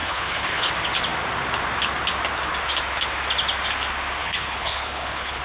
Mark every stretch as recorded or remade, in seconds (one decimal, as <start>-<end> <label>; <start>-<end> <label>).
0.0-0.7 remade; 0.7-4.2 recorded; 4.2-5.4 remade